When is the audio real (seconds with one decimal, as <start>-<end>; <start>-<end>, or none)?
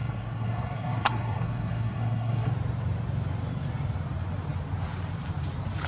2.5-5.9